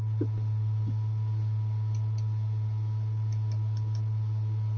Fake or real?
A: real